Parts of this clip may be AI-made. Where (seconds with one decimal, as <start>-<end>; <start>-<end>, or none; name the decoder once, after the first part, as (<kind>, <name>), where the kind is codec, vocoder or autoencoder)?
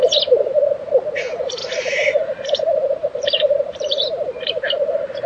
0.0-0.6 (vocoder, BigVGAN v2); 1.6-4.7